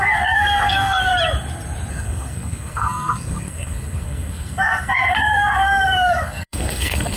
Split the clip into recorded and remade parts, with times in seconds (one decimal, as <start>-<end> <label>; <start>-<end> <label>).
0.0-1.1 remade; 1.1-1.9 recorded; 1.9-7.2 remade